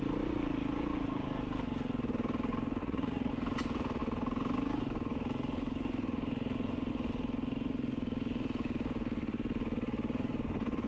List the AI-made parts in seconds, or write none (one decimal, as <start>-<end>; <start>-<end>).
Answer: 2.8-3.3